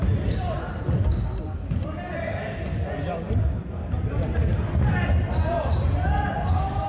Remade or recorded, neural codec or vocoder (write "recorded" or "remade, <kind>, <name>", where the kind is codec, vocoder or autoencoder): recorded